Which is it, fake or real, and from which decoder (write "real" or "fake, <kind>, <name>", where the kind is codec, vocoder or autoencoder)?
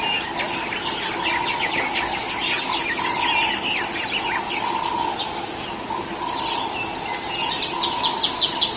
real